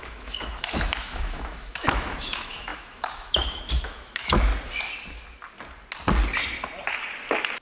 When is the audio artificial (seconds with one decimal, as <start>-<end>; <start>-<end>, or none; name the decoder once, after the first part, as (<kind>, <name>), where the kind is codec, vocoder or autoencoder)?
0.0-4.5 (autoencoder, DAC-VAE)

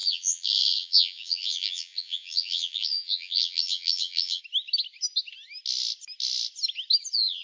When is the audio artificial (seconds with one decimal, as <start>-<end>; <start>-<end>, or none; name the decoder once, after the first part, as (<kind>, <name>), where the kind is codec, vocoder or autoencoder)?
0.0-4.4 (vocoder, BigVGAN v2)